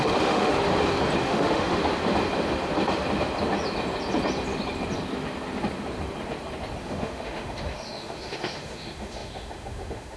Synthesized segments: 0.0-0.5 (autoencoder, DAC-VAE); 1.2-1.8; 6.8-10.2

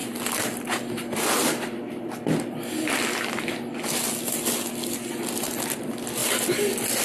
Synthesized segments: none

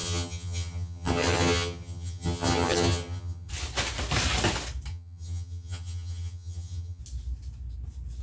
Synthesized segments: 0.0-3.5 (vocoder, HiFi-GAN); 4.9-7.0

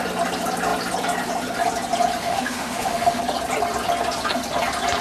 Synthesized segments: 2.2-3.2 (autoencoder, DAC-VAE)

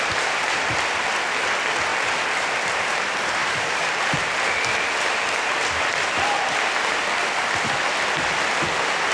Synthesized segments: 1.9-2.5 (vocoder, BigVGAN v2); 3.4-5.0